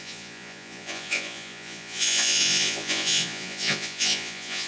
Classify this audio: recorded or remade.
remade